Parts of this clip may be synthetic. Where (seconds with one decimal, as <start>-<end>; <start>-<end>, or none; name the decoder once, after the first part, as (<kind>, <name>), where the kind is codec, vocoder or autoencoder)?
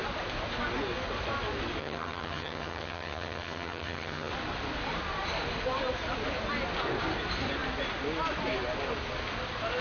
1.8-4.3 (vocoder, HiFi-GAN)